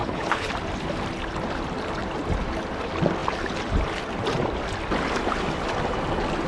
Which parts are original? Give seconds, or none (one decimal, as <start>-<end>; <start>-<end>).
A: 0.5-6.5